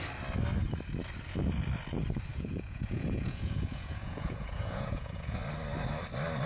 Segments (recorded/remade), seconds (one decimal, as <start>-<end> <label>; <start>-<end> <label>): 0.0-2.3 recorded; 2.3-5.4 remade; 5.4-6.5 recorded